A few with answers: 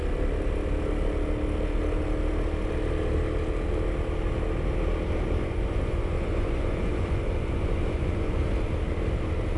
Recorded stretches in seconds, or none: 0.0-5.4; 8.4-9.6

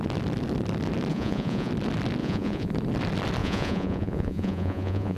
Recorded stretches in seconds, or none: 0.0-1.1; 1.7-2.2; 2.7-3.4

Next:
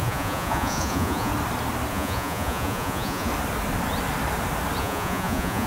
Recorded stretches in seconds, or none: 1.3-1.9; 3.3-4.8

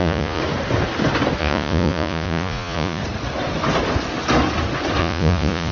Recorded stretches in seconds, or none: 0.4-1.4; 3.0-5.0

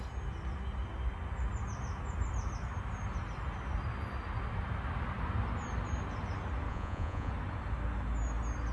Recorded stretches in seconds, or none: 0.0-6.7; 7.3-8.7

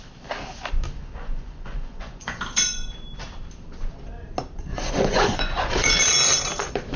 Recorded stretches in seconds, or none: 0.0-1.0; 2.4-4.7; 6.0-7.0

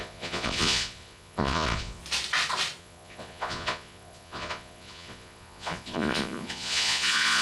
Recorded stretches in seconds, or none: 2.0-2.8